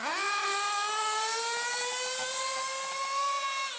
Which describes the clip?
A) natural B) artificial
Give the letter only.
A